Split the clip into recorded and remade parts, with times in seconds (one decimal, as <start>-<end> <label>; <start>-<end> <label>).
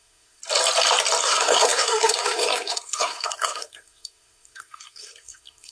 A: 0.0-0.4 remade; 0.4-1.2 recorded; 1.2-5.7 remade